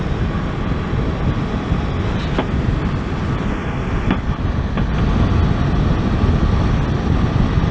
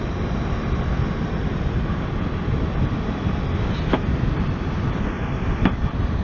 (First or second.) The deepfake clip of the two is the second